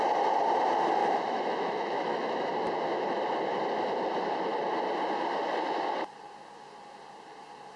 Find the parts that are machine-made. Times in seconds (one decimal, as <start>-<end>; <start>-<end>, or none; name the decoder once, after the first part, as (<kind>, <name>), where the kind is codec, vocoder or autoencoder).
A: 1.0-2.5 (autoencoder, DAC-VAE)